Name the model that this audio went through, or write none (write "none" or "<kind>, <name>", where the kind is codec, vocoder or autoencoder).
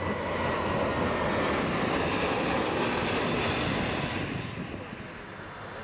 none